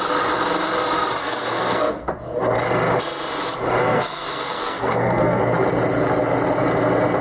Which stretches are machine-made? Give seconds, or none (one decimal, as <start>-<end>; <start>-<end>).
1.2-2.1; 3.8-5.4